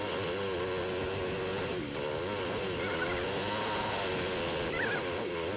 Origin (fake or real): real